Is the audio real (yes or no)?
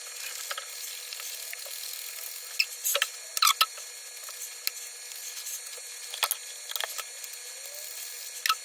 yes